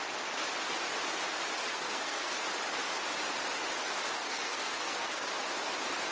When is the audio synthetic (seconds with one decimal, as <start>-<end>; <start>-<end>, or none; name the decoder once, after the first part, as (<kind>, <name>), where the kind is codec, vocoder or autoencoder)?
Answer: 1.7-2.3 (codec, SNAC); 4.2-5.3